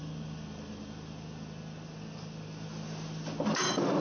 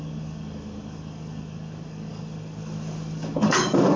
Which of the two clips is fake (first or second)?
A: second